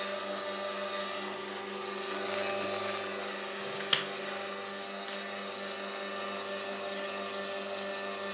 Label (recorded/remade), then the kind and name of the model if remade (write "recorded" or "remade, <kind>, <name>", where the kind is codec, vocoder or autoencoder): recorded